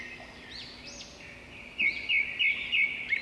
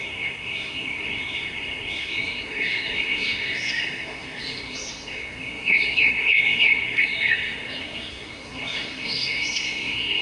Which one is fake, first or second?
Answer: second